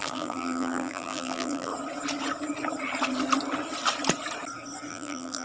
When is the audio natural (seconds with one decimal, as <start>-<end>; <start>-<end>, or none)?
1.7-4.9